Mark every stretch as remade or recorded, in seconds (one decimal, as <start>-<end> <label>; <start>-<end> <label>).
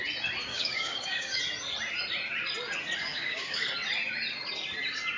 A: 0.0-0.5 recorded; 0.5-1.4 remade; 1.4-3.0 recorded; 3.0-3.7 remade; 3.7-5.2 recorded